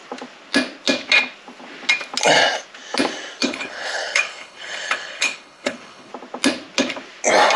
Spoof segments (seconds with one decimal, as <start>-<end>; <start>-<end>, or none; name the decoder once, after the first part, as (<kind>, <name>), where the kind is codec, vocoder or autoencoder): 3.4-6.1 (codec, HILCodec)